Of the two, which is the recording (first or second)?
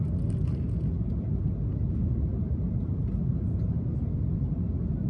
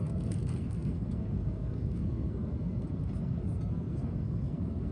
first